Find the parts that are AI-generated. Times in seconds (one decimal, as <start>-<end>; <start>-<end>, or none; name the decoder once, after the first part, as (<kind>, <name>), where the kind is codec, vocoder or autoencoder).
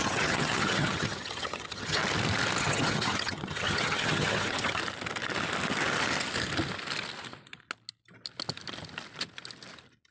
0.0-2.0 (vocoder, HiFi-GAN); 2.6-4.8